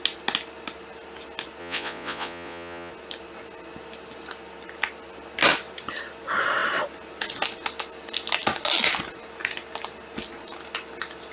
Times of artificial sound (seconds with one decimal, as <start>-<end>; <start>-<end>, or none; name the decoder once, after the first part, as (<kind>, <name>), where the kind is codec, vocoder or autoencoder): 1.6-2.9 (vocoder, Vocos)